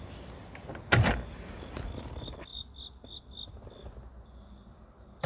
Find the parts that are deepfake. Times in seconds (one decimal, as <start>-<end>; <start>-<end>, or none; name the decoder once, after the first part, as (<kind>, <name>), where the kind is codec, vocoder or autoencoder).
none